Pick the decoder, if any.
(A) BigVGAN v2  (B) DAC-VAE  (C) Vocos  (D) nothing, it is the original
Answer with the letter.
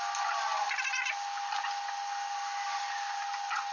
D